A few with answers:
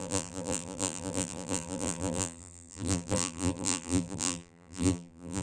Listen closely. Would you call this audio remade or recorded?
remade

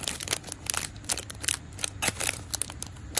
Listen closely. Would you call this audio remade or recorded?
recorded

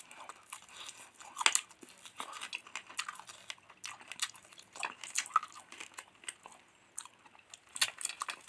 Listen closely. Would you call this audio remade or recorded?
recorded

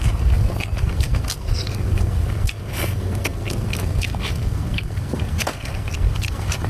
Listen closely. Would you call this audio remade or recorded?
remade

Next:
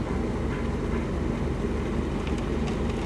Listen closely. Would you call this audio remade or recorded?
recorded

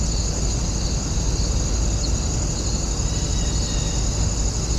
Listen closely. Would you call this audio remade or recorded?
recorded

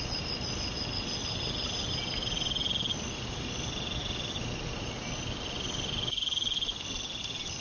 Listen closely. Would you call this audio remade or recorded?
recorded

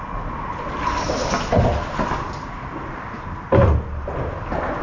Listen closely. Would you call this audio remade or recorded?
recorded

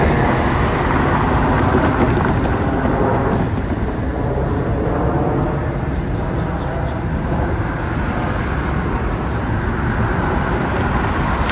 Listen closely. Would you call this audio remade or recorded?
recorded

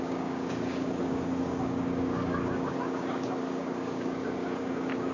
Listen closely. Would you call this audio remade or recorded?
remade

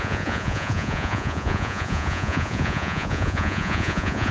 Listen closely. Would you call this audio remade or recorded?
remade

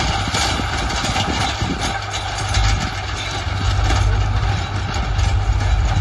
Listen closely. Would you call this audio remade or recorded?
recorded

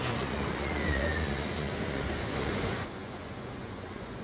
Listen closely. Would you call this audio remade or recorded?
remade